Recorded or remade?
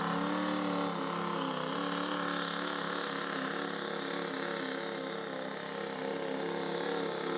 recorded